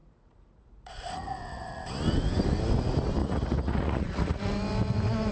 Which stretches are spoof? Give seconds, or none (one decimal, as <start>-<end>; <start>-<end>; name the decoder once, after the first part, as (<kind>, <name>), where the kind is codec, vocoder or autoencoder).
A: 0.0-1.9 (vocoder, Vocos); 3.2-4.4